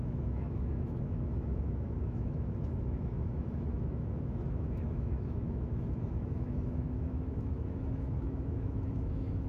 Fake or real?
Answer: fake